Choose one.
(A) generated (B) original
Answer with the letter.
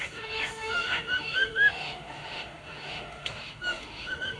A